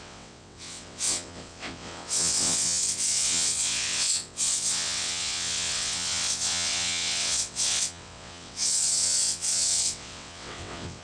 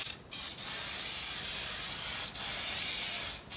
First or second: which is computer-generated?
first